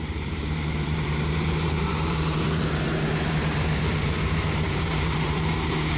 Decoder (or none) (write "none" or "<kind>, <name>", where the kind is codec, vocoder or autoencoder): vocoder, BigVGAN v2